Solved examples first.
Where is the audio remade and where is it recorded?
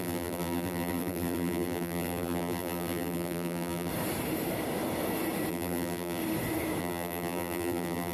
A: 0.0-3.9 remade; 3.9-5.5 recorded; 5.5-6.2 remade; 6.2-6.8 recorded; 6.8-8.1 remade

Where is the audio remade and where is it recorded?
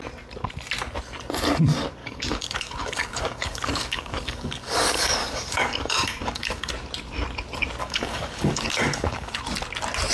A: 0.0-2.0 recorded; 2.0-6.7 remade; 6.7-7.8 recorded; 7.8-9.4 remade; 9.4-10.1 recorded